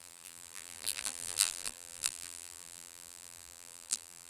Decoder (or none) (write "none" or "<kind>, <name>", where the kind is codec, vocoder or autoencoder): vocoder, BigVGAN v2